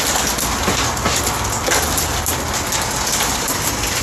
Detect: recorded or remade recorded